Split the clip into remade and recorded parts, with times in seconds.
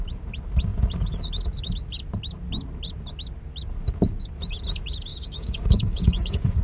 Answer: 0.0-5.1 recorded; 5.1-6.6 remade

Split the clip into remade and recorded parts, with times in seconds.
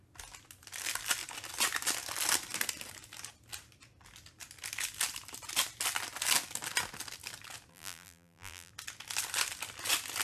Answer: 0.0-7.7 recorded; 7.7-8.7 remade; 8.7-10.2 recorded